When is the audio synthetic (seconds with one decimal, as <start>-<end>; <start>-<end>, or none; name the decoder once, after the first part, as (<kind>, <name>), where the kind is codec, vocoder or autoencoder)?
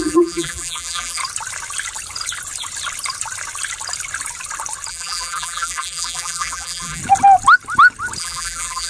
0.0-1.2 (vocoder, BigVGAN v2); 4.9-7.0; 8.2-8.9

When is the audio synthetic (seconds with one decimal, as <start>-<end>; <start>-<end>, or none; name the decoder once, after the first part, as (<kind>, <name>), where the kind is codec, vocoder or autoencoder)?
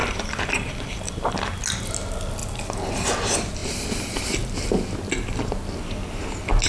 0.0-1.1 (vocoder, BigVGAN v2); 2.4-2.9; 3.6-4.7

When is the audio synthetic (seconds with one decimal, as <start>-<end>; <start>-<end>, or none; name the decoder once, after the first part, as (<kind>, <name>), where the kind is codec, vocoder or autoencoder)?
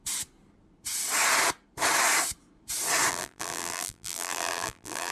3.1-5.1 (vocoder, BigVGAN v2)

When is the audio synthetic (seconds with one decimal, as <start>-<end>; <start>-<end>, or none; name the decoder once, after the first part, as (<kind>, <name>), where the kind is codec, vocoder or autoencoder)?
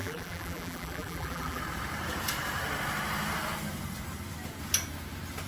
0.0-1.6 (vocoder, BigVGAN v2)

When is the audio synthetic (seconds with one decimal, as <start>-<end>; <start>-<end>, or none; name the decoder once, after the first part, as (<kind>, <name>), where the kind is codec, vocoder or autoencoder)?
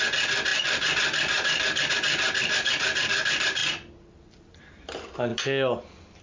0.0-6.2 (vocoder, BigVGAN v2)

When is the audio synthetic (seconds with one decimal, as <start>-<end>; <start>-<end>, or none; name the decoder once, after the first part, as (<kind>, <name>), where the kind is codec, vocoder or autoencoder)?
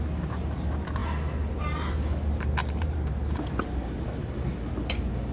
2.6-4.2 (vocoder, BigVGAN v2)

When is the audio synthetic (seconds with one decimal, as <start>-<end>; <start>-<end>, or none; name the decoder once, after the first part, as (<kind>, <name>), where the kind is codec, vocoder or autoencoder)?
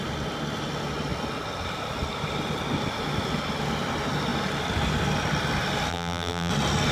5.9-6.5 (vocoder, BigVGAN v2)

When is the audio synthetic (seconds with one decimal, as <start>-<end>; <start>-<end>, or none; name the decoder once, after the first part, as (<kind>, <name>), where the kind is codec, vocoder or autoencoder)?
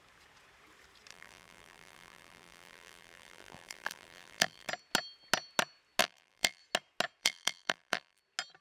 1.1-4.7 (vocoder, BigVGAN v2); 6.0-6.6; 7.2-8.2